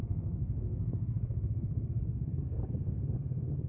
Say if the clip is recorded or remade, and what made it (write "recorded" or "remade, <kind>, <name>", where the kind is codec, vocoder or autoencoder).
remade, codec, SNAC